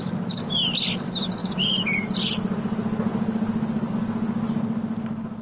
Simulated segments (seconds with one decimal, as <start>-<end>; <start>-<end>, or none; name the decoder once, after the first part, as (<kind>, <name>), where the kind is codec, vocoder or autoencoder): none